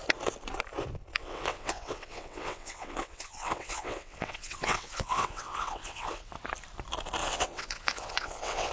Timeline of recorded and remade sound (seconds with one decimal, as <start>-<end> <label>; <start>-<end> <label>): 0.0-1.2 recorded; 1.2-6.3 remade; 6.3-7.2 recorded; 7.2-8.7 remade